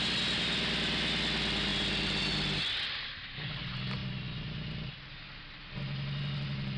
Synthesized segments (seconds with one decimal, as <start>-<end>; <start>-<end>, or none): none